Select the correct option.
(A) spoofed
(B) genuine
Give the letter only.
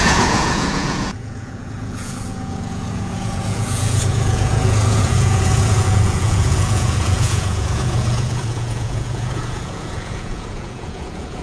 A